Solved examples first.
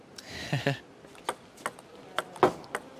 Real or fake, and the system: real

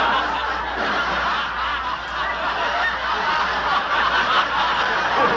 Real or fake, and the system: real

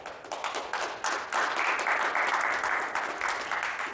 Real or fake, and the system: real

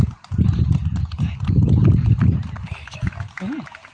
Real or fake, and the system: fake, vocoder, BigVGAN v2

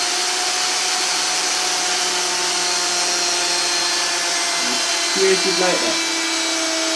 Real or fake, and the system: real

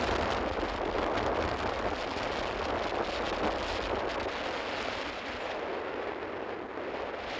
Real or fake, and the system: real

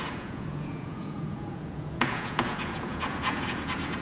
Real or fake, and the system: fake, vocoder, Vocos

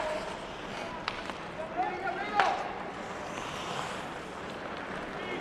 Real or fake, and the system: real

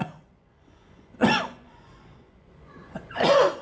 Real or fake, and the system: fake, vocoder, Vocos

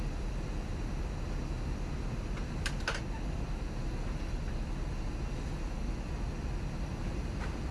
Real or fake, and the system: real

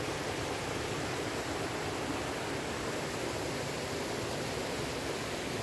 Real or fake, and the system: real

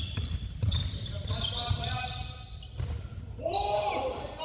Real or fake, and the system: real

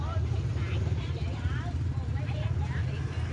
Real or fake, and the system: real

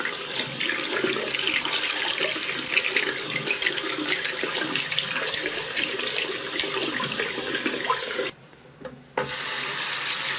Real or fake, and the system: real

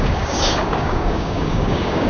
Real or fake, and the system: fake, codec, DAC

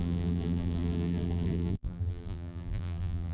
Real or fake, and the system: fake, vocoder, BigVGAN v2